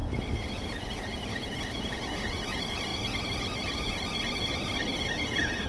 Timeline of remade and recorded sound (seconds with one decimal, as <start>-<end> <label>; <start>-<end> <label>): 0.0-5.7 recorded